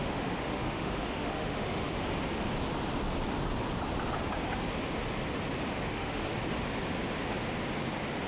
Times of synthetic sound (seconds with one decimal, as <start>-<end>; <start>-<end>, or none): 0.0-1.9; 5.7-6.3